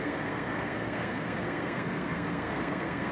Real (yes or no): no